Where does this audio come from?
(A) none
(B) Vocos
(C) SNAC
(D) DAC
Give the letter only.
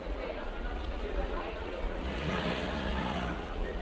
B